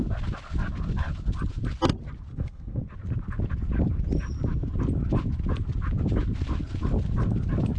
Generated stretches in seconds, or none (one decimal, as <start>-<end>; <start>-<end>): 2.3-2.8